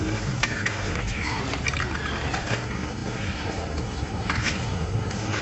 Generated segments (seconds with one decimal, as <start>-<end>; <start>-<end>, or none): 0.0-1.4; 2.4-5.4